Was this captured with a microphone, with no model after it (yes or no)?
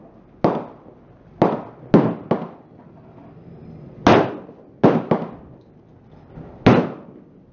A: yes